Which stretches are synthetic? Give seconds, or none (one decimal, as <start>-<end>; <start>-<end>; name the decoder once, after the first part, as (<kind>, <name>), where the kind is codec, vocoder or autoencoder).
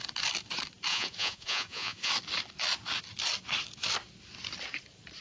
0.9-2.1 (vocoder, Vocos)